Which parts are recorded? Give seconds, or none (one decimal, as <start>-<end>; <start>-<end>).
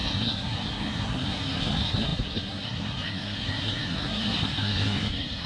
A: none